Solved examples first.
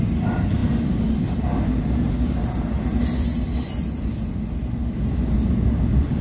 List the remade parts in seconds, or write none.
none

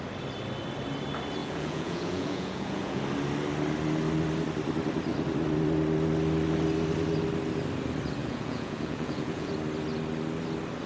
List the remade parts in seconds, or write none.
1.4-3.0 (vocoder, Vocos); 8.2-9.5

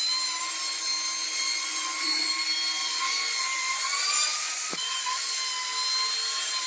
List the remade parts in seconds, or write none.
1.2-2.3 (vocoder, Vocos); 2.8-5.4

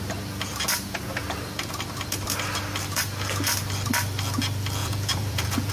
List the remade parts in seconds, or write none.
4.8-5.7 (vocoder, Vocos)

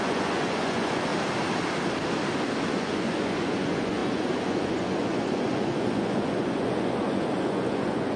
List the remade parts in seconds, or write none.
0.0-1.1 (vocoder, Vocos); 2.7-8.2